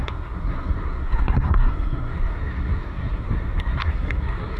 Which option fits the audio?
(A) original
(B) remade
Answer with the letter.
B